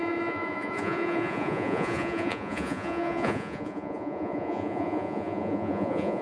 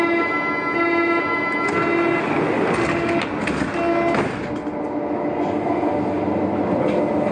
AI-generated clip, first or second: first